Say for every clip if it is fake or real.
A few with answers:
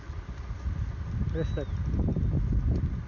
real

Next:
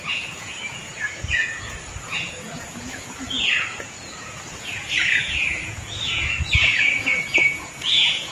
fake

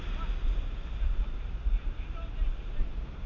real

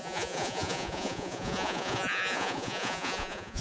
fake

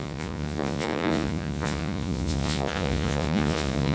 fake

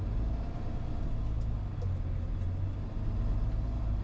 real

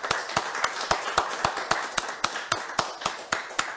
real